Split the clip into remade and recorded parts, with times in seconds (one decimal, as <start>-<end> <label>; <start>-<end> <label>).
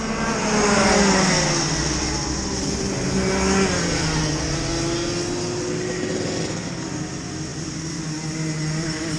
0.0-9.2 recorded